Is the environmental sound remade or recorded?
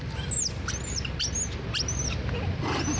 recorded